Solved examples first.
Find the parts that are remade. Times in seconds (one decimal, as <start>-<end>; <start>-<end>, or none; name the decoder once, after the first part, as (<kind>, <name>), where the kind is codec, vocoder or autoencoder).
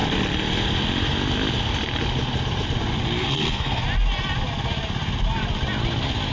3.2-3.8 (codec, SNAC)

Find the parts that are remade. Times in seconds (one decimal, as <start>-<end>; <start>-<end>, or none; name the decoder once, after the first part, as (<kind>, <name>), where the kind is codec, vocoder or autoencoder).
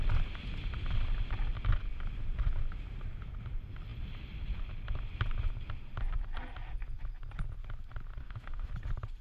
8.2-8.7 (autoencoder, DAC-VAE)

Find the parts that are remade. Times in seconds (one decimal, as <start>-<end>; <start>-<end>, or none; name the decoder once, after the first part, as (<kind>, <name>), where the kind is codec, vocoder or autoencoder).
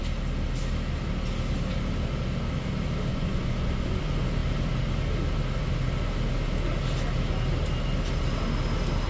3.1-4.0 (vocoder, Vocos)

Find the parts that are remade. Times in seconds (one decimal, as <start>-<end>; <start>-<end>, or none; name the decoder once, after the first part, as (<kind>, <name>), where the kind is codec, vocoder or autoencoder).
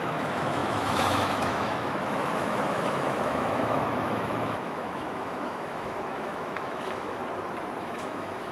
0.0-7.2 (autoencoder, DAC-VAE); 7.8-8.5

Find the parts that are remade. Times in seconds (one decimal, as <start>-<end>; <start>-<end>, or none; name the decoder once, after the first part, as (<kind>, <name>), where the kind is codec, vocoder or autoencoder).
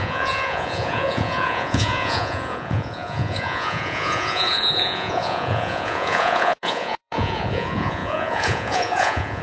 0.0-9.4 (vocoder, Vocos)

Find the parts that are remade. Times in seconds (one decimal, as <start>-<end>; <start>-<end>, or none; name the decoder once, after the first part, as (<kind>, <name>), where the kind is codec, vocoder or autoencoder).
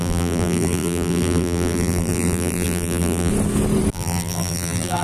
0.0-3.3 (vocoder, BigVGAN v2); 3.9-5.0